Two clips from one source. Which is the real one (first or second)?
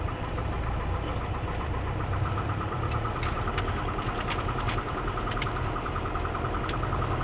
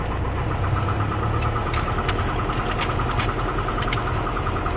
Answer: second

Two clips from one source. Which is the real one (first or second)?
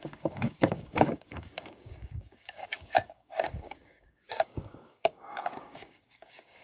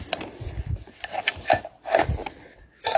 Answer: second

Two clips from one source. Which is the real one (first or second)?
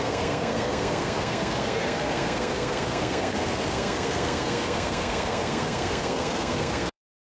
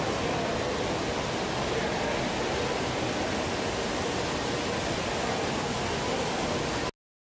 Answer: second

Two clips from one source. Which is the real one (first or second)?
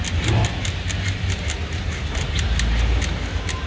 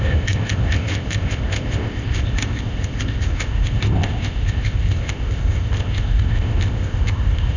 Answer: first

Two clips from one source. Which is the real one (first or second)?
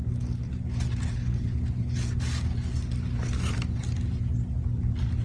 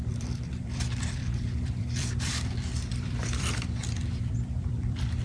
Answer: first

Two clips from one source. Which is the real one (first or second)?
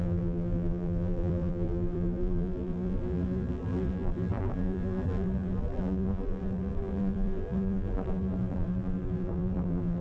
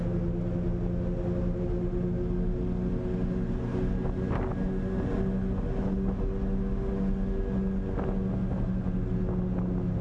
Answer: second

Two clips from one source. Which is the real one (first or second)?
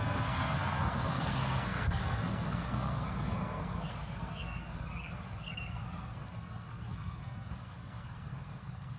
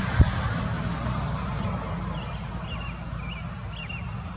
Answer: second